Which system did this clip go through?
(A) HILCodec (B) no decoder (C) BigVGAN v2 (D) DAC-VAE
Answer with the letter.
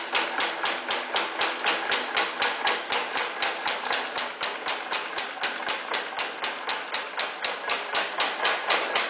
B